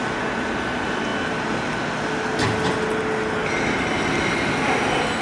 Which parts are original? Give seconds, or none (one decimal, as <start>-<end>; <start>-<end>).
0.0-5.2